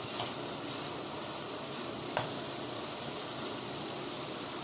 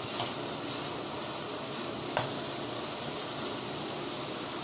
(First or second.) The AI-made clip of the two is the first